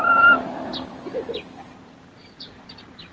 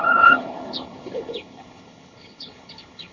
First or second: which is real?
first